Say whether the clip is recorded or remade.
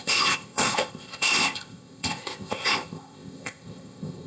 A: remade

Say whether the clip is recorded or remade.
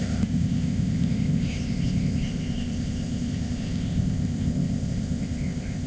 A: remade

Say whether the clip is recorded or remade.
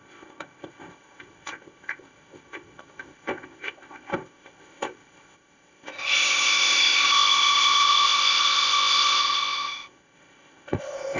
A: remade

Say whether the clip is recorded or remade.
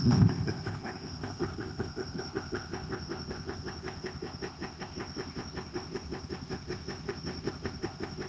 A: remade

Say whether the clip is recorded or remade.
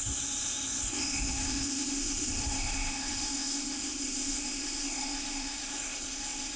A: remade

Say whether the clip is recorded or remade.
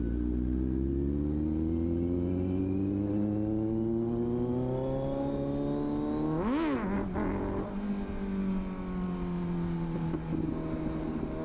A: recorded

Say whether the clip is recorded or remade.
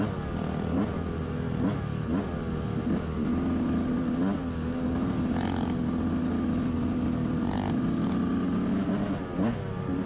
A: recorded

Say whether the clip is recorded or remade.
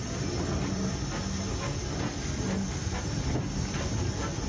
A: recorded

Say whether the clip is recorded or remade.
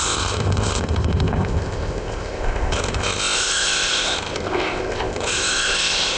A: remade